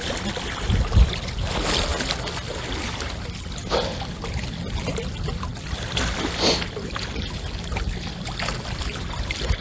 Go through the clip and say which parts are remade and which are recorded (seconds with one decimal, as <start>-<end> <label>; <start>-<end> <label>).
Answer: 0.0-9.6 recorded